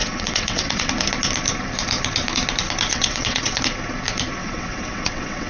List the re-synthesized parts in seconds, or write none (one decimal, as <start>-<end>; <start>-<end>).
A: 0.0-0.9; 2.9-3.6; 4.4-5.5